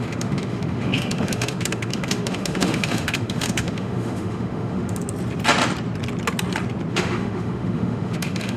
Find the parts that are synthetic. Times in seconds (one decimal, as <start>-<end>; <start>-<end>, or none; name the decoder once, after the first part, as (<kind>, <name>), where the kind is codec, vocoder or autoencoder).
0.0-5.0 (autoencoder, DAC-VAE); 6.9-8.6

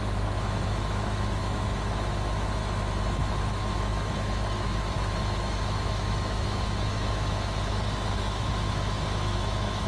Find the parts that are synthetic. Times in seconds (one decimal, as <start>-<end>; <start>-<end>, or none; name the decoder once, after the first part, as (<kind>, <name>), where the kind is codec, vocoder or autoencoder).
0.0-2.6 (autoencoder, DAC-VAE); 3.4-9.9

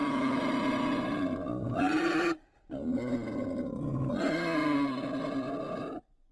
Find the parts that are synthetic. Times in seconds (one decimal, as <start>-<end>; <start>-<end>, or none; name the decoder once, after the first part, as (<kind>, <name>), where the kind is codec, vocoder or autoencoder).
none

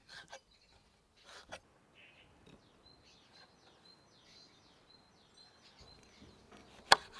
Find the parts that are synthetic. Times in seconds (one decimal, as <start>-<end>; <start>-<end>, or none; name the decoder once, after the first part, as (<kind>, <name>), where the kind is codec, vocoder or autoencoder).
none

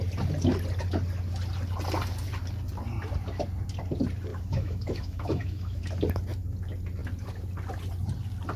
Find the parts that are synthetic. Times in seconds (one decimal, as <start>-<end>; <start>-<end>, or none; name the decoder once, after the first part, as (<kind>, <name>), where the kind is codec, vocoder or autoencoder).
4.3-5.8 (autoencoder, DAC-VAE)

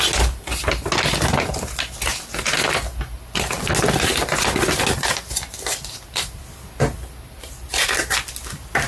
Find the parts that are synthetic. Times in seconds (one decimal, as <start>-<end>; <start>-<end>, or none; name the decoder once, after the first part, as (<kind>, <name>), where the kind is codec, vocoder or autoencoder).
none

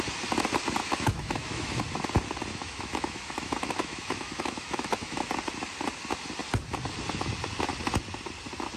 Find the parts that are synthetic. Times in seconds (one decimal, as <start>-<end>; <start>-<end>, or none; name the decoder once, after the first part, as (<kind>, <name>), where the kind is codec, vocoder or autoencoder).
0.8-1.8 (autoencoder, DAC-VAE); 2.5-5.2